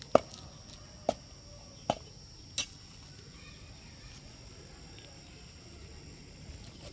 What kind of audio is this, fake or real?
real